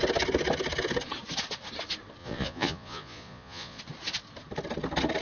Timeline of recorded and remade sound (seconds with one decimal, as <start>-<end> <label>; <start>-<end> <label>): 0.0-2.2 recorded; 2.2-3.8 remade; 3.8-5.2 recorded